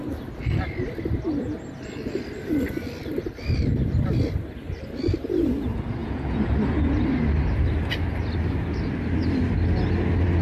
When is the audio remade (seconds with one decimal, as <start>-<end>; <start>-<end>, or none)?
6.0-6.5